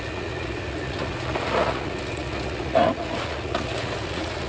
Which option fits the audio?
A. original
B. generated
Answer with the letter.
B